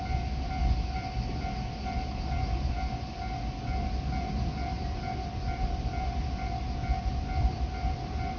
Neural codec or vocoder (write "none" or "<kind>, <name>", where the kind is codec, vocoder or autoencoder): none